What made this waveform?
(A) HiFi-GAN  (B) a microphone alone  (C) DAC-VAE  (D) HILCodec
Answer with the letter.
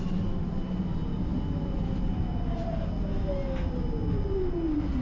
B